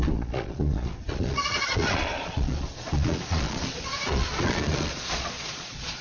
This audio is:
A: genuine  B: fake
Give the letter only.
B